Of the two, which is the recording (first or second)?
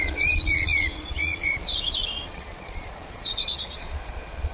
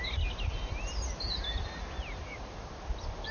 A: second